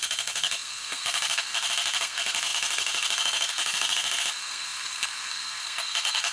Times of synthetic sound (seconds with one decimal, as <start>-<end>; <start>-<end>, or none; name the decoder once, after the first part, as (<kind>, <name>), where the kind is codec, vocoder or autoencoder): 0.0-6.3 (codec, SNAC)